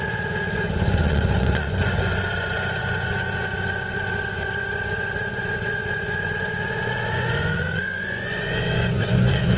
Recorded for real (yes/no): no